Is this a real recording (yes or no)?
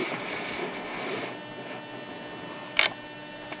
yes